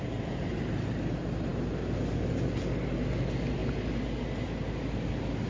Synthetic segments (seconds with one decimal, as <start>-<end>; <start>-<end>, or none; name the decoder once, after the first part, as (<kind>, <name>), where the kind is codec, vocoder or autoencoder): none